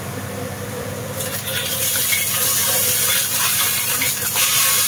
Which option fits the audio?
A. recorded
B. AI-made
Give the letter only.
B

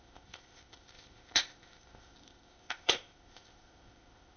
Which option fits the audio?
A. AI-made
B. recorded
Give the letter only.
A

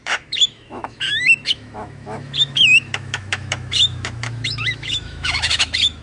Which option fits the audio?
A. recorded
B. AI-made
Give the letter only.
B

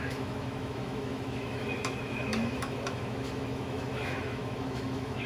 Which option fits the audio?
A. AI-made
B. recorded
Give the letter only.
A